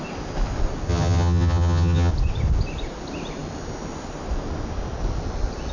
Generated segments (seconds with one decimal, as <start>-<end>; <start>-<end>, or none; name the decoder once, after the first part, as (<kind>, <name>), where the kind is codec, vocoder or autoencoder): 0.9-2.1 (vocoder, HiFi-GAN)